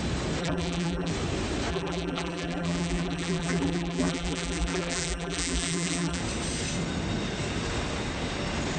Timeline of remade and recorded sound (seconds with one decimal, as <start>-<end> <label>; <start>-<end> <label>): 0.0-0.4 recorded; 0.4-1.1 remade; 1.1-1.7 recorded; 1.7-6.2 remade; 6.2-8.8 recorded